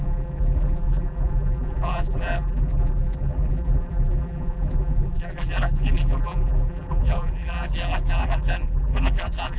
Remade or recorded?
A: remade